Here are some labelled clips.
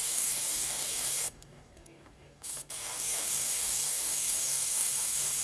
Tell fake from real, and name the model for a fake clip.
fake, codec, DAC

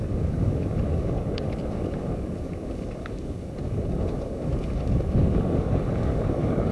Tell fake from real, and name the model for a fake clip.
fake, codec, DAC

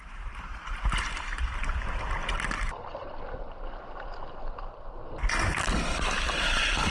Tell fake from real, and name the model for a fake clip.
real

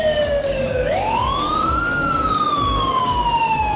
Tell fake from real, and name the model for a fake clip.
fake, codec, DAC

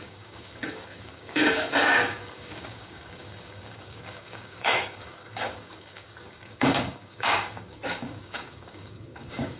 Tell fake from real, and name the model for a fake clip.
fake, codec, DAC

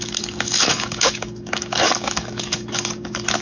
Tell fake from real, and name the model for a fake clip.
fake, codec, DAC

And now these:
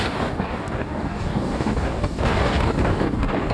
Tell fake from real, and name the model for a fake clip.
fake, codec, DAC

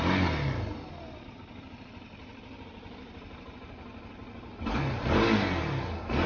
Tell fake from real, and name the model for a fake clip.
real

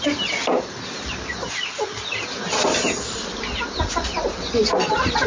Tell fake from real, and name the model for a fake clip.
real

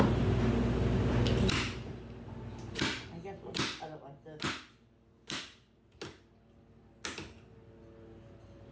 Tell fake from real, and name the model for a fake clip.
real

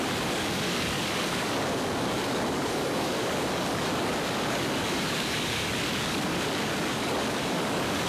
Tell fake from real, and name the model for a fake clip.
fake, codec, DAC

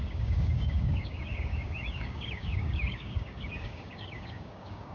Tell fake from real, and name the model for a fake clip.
fake, codec, DAC